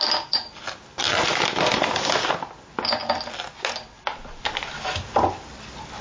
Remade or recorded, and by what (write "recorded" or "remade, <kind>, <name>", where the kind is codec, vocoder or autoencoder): recorded